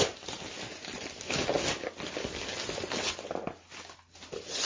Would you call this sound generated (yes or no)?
no